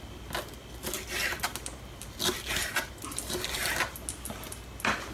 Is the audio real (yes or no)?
yes